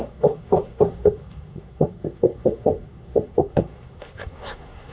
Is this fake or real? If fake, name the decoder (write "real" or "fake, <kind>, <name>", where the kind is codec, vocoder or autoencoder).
fake, codec, SNAC